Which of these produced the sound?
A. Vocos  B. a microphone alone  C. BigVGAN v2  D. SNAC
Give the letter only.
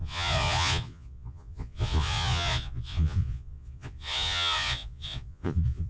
A